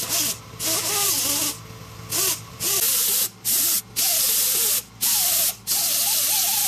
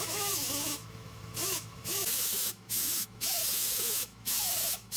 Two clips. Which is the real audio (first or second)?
first